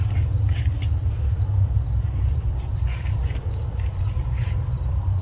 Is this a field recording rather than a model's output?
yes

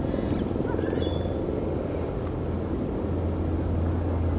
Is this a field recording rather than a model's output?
yes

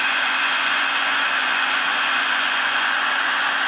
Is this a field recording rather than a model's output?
no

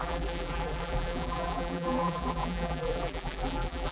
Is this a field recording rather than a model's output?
no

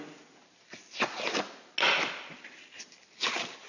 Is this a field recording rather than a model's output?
yes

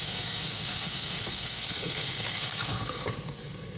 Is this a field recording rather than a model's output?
no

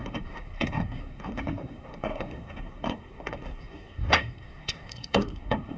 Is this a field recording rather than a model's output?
no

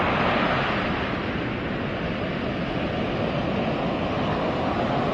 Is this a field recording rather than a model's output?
yes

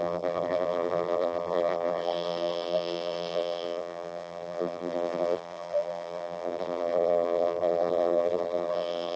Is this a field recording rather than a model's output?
no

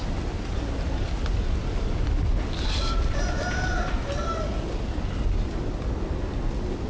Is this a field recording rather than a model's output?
yes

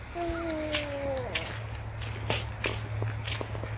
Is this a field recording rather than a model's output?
yes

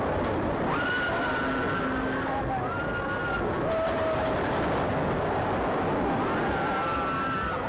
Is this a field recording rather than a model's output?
yes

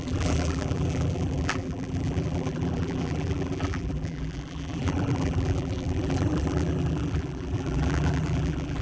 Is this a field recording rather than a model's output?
no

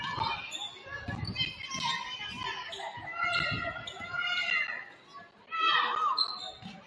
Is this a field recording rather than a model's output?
yes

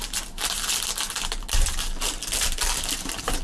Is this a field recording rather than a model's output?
yes